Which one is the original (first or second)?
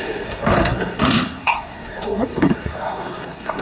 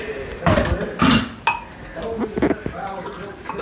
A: second